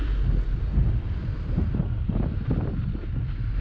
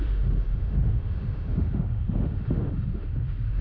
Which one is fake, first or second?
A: second